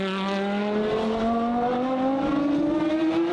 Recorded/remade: recorded